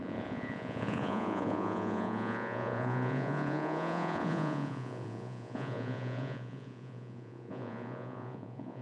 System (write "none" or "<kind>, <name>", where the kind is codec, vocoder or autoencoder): vocoder, Vocos